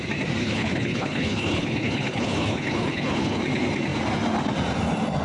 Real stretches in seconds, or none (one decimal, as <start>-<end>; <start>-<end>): 0.0-0.4; 3.4-5.2